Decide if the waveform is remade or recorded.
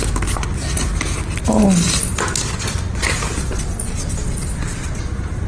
recorded